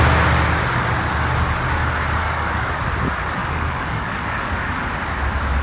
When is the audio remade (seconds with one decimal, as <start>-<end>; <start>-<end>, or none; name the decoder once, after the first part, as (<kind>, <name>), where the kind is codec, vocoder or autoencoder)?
2.2-2.8 (codec, DAC); 3.4-4.9